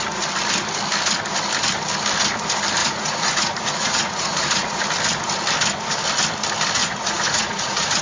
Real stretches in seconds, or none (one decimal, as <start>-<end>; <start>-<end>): 0.0-2.8; 4.8-6.8